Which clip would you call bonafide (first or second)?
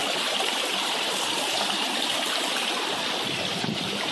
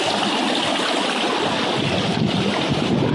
second